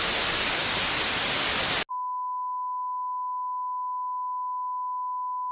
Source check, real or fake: real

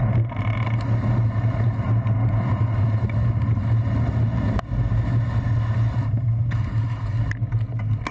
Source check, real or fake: real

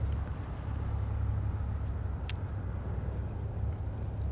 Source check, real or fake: real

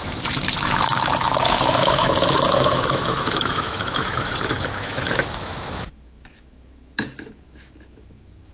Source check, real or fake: fake